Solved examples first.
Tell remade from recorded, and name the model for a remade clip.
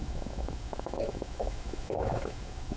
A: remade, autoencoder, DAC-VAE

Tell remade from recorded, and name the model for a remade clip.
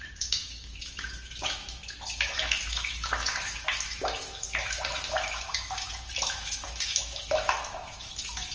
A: remade, autoencoder, DAC-VAE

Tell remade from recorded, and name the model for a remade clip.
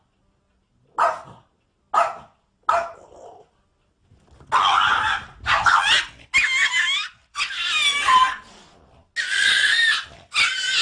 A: recorded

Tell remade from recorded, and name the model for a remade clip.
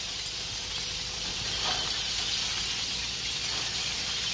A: recorded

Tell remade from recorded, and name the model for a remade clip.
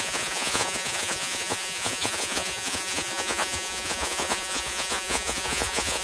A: remade, vocoder, Vocos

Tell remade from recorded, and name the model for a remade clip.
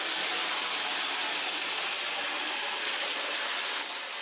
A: recorded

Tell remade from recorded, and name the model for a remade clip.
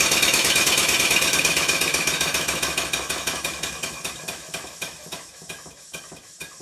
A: remade, autoencoder, DAC-VAE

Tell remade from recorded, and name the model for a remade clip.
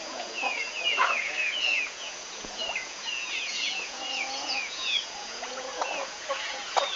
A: remade, vocoder, Vocos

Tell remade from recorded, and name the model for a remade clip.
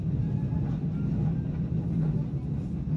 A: recorded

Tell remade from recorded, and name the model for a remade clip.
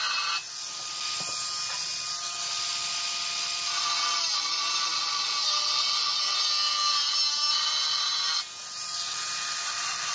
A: recorded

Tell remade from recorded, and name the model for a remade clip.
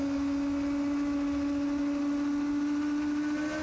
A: recorded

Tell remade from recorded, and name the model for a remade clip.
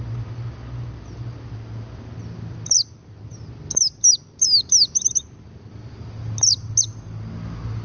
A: recorded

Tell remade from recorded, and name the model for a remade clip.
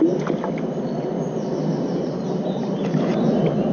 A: recorded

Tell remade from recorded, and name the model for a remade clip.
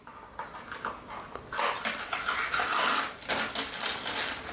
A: recorded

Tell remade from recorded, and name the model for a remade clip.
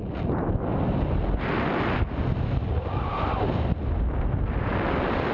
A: recorded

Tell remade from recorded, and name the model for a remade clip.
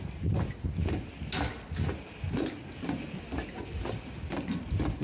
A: recorded